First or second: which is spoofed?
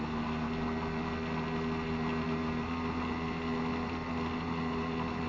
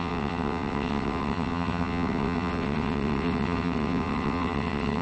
second